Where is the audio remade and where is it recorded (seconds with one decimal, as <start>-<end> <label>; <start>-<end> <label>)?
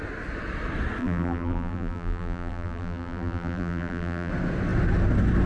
0.0-1.0 recorded; 1.0-4.3 remade; 4.3-5.5 recorded